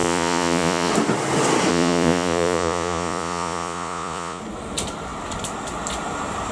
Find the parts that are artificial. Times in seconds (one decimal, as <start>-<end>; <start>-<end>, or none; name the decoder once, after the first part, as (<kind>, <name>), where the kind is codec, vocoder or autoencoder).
0.0-0.9 (vocoder, Vocos); 1.7-4.4